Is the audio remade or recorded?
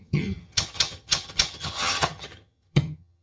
remade